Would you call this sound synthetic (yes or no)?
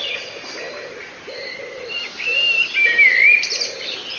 no